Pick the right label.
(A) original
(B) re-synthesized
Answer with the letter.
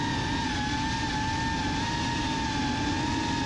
A